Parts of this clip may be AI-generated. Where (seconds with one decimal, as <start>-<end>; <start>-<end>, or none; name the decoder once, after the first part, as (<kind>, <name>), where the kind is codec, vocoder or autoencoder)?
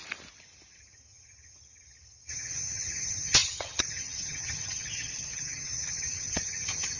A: 0.8-7.0 (vocoder, HiFi-GAN)